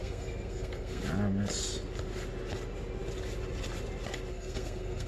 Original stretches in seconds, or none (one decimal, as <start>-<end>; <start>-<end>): 1.0-4.3